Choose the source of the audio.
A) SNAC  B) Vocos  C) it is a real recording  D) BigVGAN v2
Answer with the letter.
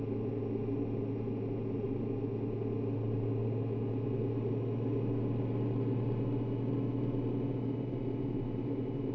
C